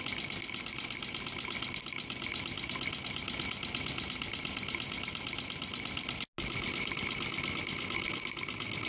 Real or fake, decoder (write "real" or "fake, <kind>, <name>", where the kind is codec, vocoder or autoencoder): real